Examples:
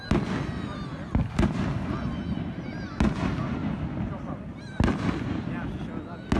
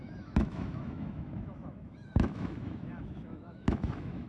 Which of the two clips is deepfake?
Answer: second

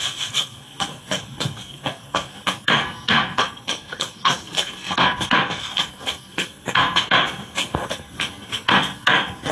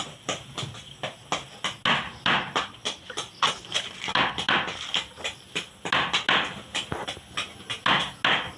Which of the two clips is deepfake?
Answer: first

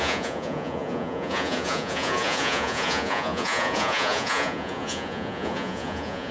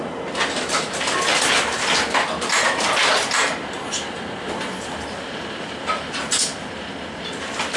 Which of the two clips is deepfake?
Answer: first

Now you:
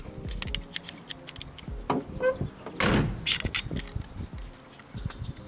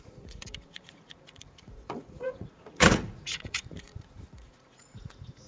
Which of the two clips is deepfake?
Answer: second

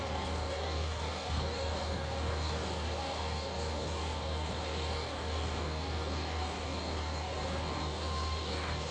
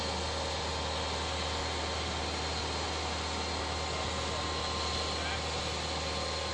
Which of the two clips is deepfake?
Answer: first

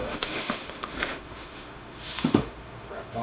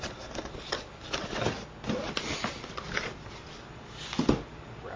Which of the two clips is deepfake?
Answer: first